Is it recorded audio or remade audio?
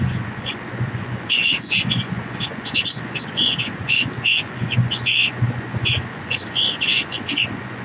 remade